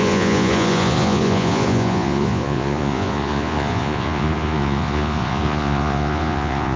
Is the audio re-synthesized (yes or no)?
yes